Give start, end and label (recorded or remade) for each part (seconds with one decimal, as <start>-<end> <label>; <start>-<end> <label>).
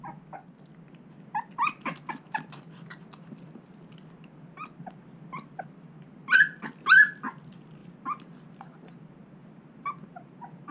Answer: 0.0-10.7 recorded